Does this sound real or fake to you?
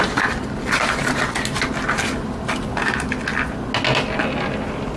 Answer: real